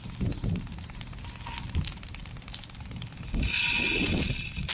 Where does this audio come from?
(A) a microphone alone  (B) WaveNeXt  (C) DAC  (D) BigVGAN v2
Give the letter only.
A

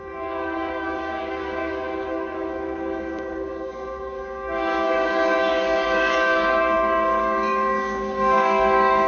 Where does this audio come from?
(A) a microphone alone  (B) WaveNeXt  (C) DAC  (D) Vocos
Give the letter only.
C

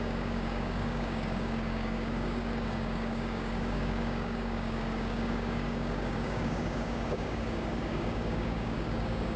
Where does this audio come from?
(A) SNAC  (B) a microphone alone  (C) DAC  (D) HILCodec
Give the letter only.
C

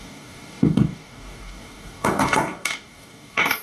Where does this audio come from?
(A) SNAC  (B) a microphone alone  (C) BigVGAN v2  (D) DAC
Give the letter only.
D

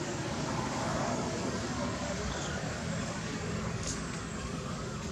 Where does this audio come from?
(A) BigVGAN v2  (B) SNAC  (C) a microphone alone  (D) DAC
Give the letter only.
D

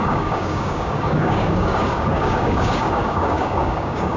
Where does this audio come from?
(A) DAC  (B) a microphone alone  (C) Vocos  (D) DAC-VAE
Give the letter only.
A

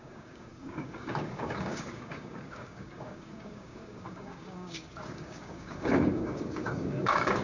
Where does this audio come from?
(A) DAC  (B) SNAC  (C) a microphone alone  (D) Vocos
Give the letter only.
A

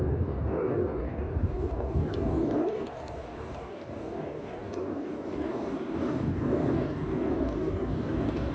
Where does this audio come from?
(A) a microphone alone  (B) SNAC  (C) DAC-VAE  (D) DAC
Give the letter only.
D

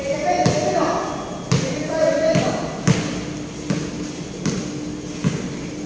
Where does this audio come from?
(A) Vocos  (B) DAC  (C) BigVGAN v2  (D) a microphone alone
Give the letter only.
D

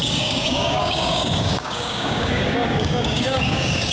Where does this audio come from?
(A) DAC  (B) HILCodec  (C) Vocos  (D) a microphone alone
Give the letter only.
A